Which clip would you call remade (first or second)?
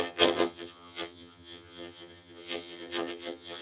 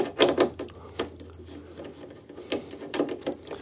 first